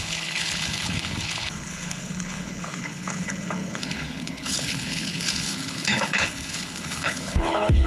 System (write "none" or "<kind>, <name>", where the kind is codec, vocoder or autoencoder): codec, HILCodec